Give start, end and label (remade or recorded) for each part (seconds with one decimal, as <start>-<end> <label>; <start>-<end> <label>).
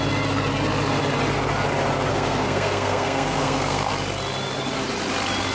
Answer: 0.0-2.1 recorded; 2.1-3.9 remade; 3.9-5.5 recorded